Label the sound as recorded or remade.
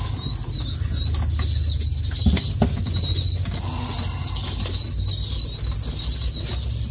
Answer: recorded